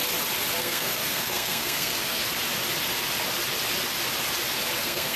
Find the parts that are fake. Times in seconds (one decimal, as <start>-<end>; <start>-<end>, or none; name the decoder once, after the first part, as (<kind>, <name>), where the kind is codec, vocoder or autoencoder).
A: 0.6-2.2 (codec, SNAC); 4.8-5.2